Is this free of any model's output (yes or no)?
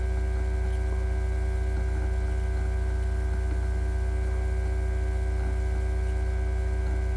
yes